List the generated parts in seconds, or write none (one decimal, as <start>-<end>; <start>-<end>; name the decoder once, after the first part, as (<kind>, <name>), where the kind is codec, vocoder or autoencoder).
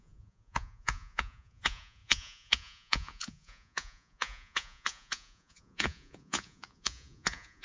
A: 0.0-7.6 (vocoder, Vocos)